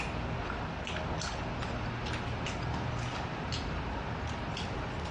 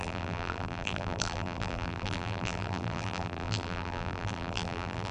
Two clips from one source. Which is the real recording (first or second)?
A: first